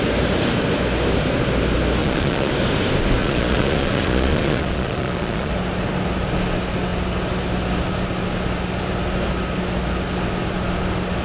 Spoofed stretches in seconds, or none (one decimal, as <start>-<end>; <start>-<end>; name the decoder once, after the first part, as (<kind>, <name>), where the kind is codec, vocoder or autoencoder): 2.0-2.5 (vocoder, Vocos); 3.2-5.5